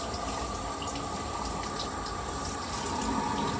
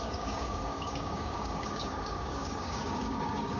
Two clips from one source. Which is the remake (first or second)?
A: second